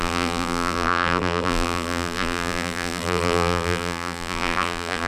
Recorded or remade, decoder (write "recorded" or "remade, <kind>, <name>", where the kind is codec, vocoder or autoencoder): remade, vocoder, BigVGAN v2